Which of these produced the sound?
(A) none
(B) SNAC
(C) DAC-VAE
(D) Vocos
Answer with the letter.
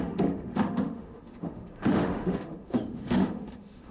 C